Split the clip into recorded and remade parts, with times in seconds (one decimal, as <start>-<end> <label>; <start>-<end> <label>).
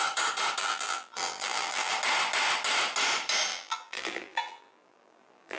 0.0-0.6 recorded; 0.6-1.9 remade; 1.9-3.5 recorded; 3.5-5.6 remade